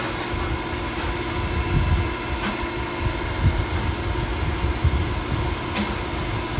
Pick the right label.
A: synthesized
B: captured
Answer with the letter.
B